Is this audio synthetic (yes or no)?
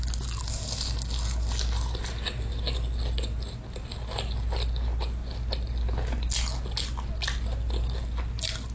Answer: no